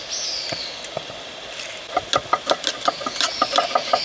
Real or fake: real